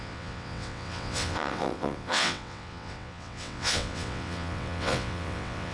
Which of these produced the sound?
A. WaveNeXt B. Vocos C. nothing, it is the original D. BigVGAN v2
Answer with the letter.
A